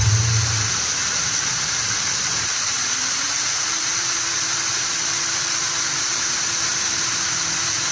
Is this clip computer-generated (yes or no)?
yes